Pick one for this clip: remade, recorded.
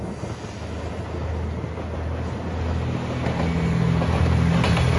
recorded